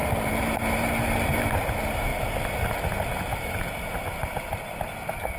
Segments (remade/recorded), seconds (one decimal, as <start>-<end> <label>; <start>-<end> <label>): 0.0-1.4 remade; 1.4-5.4 recorded